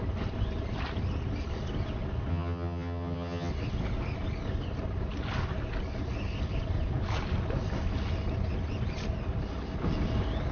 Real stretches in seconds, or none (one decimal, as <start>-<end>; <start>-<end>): 0.0-2.3; 3.5-10.5

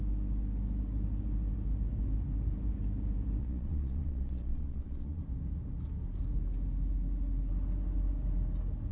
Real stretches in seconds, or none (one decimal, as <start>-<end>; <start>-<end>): 0.0-3.4; 5.2-8.9

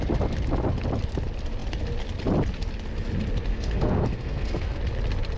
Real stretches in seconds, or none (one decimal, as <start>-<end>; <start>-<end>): 0.0-3.5; 4.8-5.4

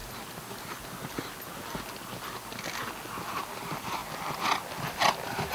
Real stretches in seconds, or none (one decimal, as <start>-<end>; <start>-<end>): 0.0-3.3; 4.0-5.1

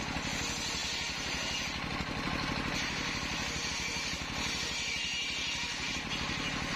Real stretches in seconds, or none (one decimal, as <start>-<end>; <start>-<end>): 0.0-6.8

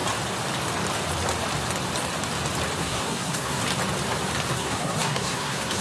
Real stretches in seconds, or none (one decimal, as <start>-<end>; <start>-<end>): 0.0-2.8; 3.6-4.5

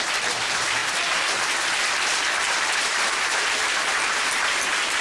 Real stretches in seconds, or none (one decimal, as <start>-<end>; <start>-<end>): 0.0-5.0

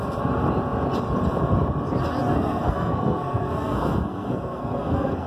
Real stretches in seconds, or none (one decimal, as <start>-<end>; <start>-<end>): 0.0-2.3